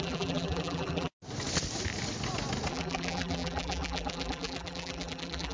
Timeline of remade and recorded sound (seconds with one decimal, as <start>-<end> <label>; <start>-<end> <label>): 0.0-1.1 remade; 1.1-2.7 recorded; 2.7-5.5 remade